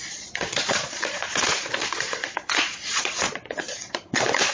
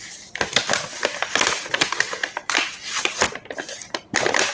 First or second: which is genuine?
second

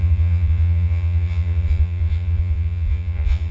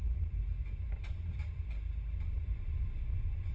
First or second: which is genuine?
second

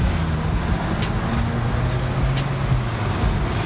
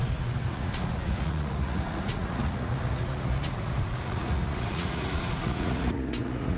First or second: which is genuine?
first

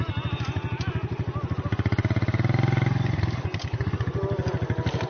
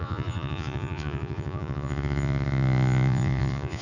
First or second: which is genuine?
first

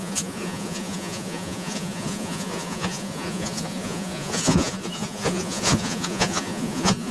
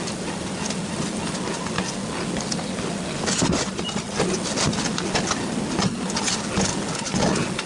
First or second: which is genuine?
second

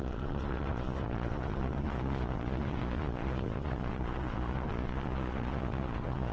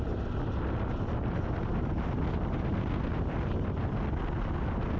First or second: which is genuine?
second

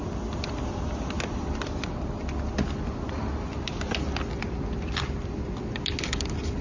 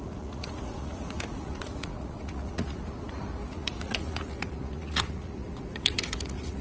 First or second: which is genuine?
first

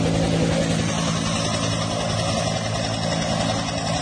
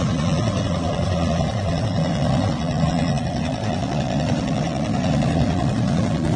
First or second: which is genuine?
first